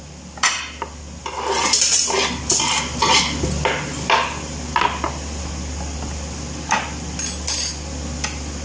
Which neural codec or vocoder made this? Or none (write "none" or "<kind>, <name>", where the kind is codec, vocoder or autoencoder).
none